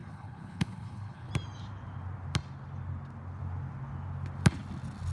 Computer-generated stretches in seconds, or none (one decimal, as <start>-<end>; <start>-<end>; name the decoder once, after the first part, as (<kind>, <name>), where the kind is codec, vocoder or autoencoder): 0.0-1.3 (codec, HILCodec)